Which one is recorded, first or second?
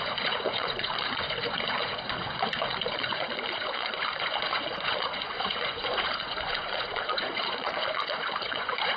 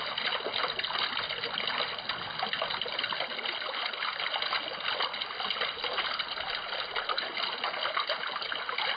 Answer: second